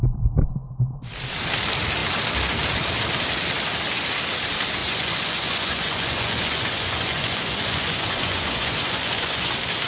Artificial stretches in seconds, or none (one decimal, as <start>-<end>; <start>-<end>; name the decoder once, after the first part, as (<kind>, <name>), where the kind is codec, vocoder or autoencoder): 4.8-9.5 (vocoder, Vocos)